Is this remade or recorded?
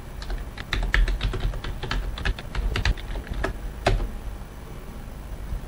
recorded